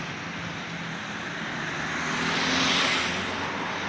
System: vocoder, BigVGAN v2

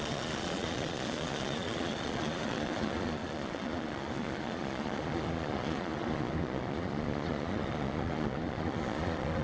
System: vocoder, Vocos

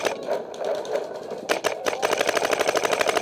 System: vocoder, BigVGAN v2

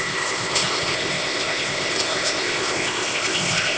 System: codec, ZipCodec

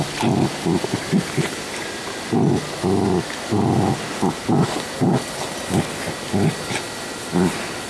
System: none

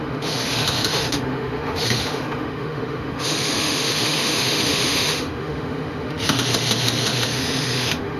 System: autoencoder, DAC-VAE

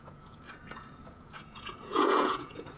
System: vocoder, Vocos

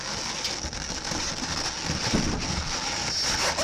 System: none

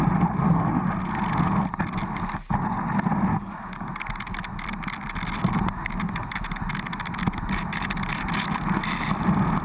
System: none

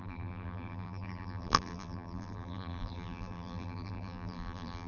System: vocoder, BigVGAN v2